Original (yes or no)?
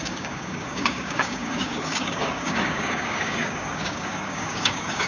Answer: no